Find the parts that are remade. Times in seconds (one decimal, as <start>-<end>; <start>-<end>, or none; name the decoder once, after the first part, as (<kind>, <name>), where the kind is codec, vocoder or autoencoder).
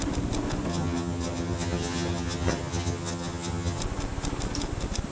0.7-3.8 (vocoder, HiFi-GAN)